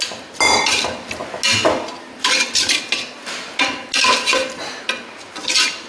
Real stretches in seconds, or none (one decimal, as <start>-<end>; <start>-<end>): 0.0-5.9